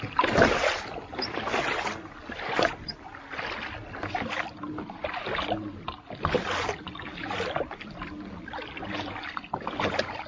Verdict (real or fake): real